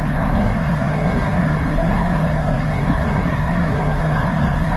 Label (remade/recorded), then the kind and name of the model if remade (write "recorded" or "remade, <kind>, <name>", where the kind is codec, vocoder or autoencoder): remade, codec, SNAC